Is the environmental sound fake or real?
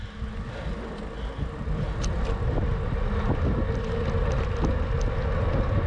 real